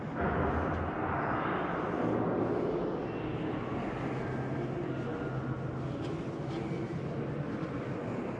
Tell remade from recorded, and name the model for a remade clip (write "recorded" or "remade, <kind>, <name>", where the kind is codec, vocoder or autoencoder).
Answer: recorded